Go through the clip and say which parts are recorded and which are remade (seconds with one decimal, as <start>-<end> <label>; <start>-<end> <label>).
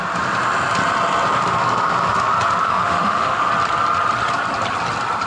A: 0.0-2.6 recorded; 2.6-3.5 remade; 3.5-5.3 recorded